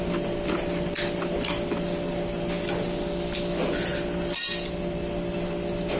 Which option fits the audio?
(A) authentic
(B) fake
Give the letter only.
A